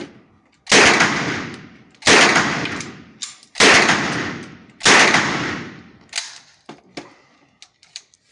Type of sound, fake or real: real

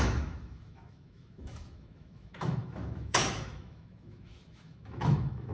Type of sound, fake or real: fake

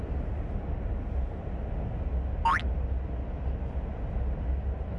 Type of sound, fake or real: real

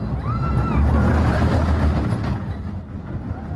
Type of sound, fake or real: real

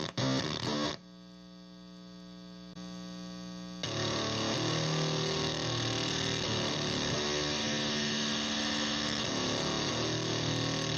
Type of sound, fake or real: real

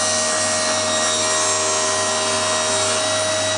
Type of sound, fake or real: real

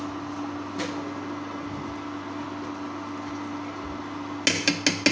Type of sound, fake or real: real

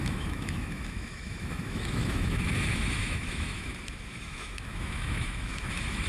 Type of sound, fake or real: fake